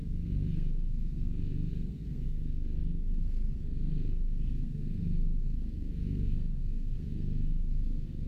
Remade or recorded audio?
remade